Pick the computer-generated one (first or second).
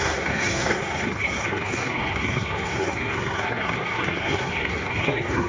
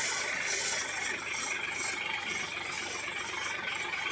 first